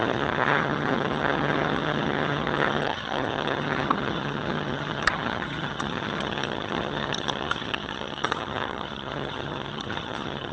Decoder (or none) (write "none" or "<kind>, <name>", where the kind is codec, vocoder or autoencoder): vocoder, HiFi-GAN